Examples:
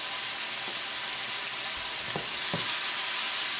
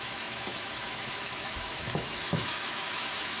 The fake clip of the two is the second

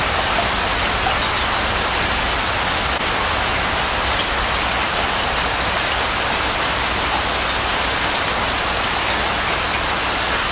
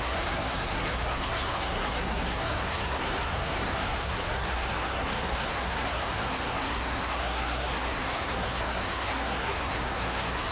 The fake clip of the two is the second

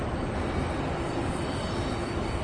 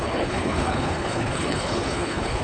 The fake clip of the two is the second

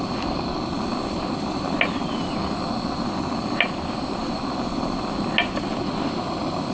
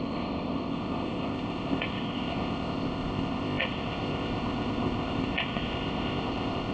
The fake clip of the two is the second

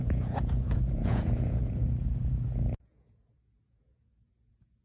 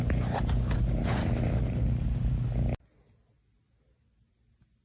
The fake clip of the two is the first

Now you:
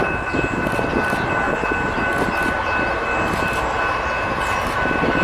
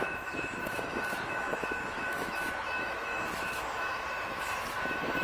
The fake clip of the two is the second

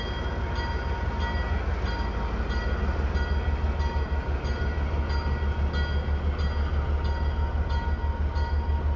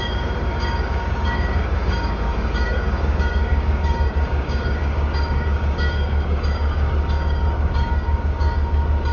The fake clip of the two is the second